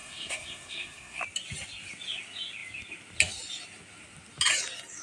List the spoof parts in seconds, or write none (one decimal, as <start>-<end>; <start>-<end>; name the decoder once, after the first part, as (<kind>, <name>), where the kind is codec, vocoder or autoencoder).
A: 0.0-1.2 (codec, SNAC)